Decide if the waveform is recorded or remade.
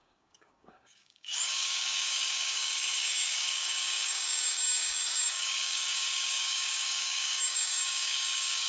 remade